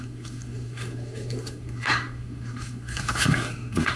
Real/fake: fake